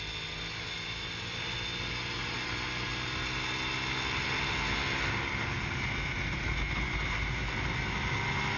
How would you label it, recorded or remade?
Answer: recorded